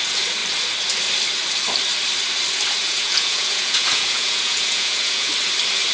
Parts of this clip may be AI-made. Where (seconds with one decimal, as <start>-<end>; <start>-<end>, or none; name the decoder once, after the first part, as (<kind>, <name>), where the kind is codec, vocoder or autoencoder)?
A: 2.8-5.3 (vocoder, Vocos)